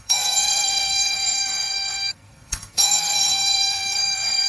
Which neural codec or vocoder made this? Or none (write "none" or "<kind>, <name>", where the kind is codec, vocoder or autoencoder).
codec, SNAC